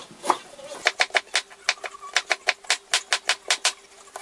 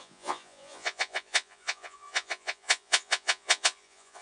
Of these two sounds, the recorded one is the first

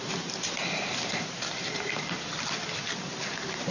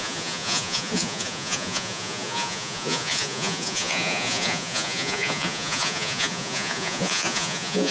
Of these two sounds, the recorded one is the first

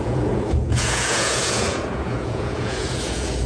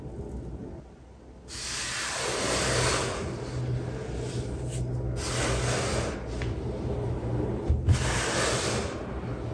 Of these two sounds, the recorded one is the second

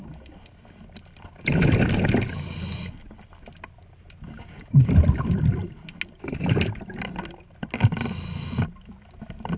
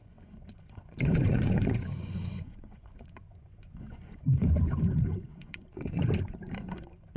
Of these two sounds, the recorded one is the first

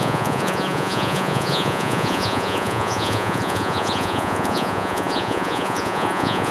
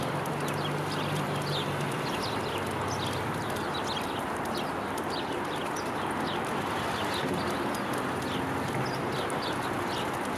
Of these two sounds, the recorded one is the second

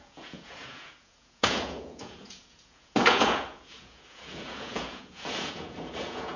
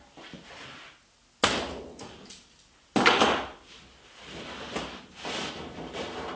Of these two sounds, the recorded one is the second